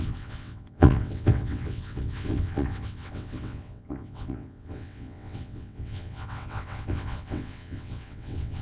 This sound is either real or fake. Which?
fake